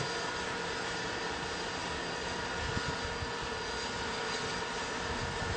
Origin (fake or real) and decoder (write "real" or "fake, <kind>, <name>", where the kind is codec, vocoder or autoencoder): real